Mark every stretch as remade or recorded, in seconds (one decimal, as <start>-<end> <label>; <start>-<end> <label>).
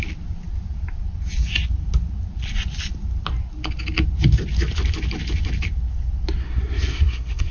0.0-6.4 recorded; 6.4-7.5 remade